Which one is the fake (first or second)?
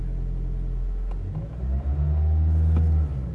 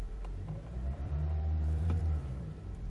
second